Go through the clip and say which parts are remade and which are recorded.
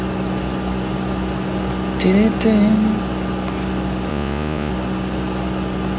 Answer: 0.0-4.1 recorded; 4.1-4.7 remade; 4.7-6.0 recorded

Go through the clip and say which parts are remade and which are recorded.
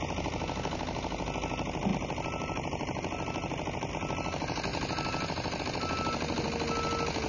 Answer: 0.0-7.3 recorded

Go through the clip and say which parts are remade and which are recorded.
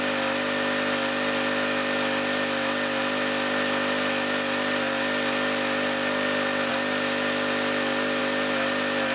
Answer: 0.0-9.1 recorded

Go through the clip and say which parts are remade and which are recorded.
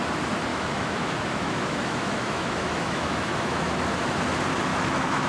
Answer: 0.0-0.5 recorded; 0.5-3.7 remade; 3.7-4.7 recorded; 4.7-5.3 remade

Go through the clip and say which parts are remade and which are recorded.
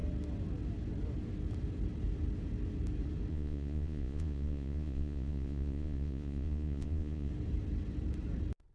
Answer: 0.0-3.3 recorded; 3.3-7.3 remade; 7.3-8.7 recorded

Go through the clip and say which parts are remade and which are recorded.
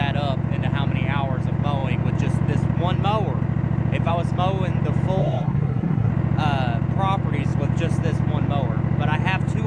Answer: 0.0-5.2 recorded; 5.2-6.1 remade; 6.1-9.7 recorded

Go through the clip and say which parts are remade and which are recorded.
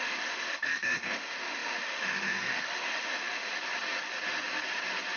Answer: 0.0-3.5 remade; 3.5-5.2 recorded